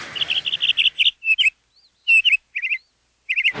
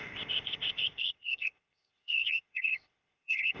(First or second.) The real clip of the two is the first